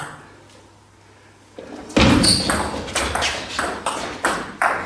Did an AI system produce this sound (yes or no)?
no